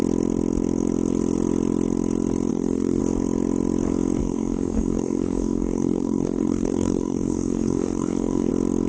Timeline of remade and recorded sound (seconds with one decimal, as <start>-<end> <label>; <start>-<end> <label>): 0.0-2.5 recorded; 2.5-3.0 remade; 3.0-4.2 recorded; 4.2-8.5 remade; 8.5-8.9 recorded

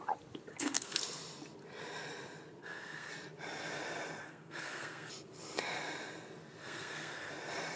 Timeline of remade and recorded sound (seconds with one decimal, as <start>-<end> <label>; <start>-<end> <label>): 0.0-0.5 recorded; 0.5-1.0 remade; 1.0-2.6 recorded; 2.6-3.1 remade; 3.1-4.2 recorded; 4.2-5.1 remade; 5.1-6.6 recorded; 6.6-7.3 remade; 7.3-7.8 recorded

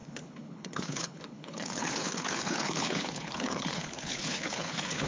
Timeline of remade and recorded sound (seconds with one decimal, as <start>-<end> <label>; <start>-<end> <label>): 0.0-5.1 remade